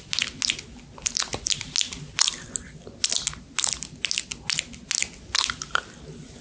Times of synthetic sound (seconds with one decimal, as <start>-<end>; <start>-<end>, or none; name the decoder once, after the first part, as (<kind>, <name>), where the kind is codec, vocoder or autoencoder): none